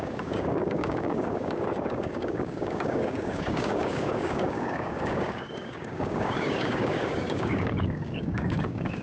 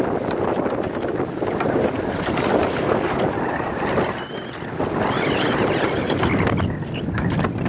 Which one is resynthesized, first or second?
first